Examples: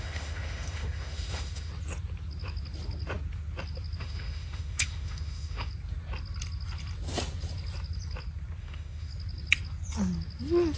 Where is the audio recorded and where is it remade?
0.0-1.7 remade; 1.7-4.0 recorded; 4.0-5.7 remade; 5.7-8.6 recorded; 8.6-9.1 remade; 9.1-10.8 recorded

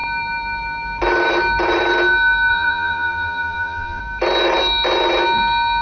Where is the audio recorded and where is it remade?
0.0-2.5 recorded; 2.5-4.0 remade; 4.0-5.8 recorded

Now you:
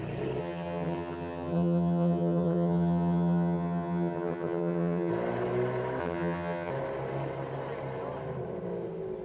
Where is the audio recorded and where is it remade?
0.0-0.4 recorded; 0.4-5.1 remade; 5.1-6.0 recorded; 6.0-6.7 remade; 6.7-9.2 recorded

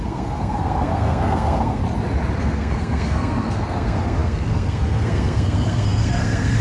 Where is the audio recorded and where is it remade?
0.0-1.8 remade; 1.8-2.4 recorded; 2.4-6.6 remade

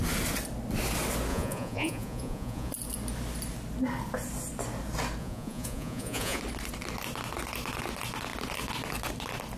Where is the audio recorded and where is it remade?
0.0-1.3 recorded; 1.3-2.7 remade; 2.7-5.2 recorded; 5.2-6.4 remade; 6.4-9.6 recorded

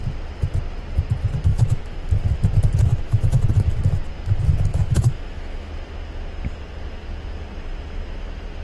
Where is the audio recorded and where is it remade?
0.0-1.5 recorded; 1.5-2.1 remade; 2.1-2.9 recorded; 2.9-3.8 remade; 3.8-4.7 recorded; 4.7-5.7 remade; 5.7-8.6 recorded